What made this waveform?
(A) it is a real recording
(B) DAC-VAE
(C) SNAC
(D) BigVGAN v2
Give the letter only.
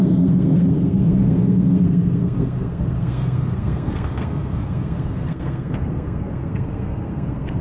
C